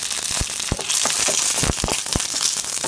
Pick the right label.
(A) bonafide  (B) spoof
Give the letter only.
A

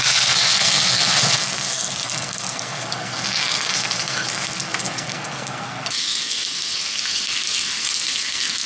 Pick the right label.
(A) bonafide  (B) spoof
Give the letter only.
B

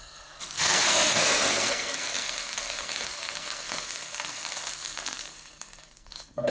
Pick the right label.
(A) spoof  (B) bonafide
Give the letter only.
A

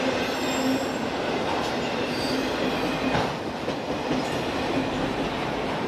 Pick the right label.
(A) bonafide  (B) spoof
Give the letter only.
A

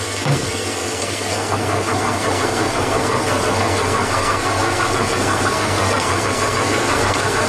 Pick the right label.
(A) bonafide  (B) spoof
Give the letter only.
B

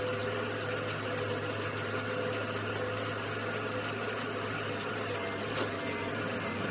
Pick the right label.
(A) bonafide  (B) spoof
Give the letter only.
A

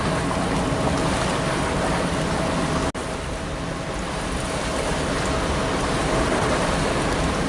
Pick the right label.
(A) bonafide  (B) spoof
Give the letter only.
A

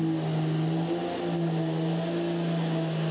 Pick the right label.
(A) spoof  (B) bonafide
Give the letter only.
B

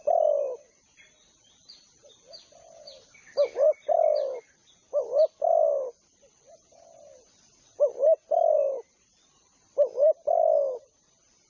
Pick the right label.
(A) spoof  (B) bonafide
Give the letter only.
B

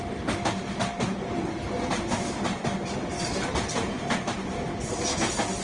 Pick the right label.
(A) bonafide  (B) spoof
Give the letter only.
A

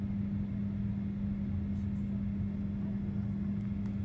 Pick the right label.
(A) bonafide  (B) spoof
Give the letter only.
A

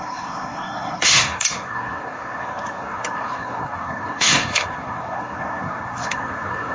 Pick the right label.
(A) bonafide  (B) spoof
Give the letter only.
B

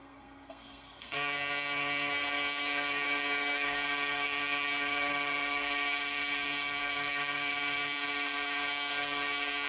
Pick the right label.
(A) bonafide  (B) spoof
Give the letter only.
B